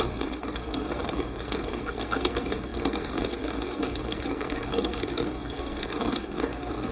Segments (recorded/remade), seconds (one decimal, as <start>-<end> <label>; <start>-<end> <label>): 0.0-6.9 remade

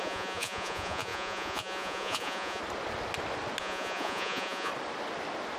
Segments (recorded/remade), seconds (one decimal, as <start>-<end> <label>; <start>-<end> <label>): 0.0-2.6 remade; 2.6-3.6 recorded; 3.6-4.7 remade; 4.7-5.6 recorded

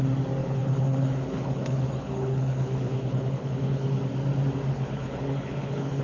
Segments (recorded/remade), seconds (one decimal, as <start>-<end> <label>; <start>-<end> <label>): 0.0-0.4 recorded; 0.4-4.0 remade; 4.0-4.7 recorded; 4.7-6.0 remade

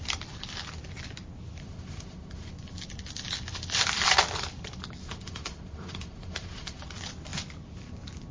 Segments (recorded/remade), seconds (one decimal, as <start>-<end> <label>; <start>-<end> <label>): 0.0-1.6 recorded; 1.6-2.5 remade; 2.5-5.0 recorded; 5.0-6.8 remade; 6.8-8.3 recorded

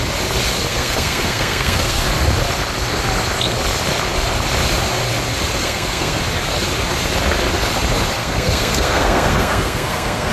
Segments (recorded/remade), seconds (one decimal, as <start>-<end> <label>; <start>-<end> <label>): 0.0-0.7 recorded; 0.7-2.0 remade; 2.0-5.6 recorded; 5.6-6.2 remade; 6.2-8.2 recorded; 8.2-10.3 remade